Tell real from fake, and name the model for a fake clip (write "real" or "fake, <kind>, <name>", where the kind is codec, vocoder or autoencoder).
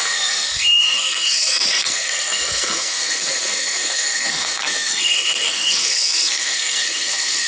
fake, codec, SNAC